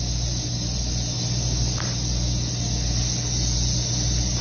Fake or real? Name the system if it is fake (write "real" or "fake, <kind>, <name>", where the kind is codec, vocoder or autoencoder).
real